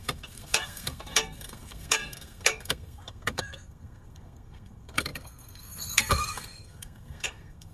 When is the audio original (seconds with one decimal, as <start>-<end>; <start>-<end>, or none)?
none